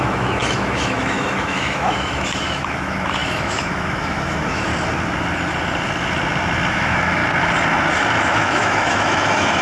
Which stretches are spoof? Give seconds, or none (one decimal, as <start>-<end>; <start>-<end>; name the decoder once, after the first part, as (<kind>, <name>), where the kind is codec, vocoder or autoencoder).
0.0-4.7 (autoencoder, DAC-VAE); 6.7-7.2; 8.2-9.6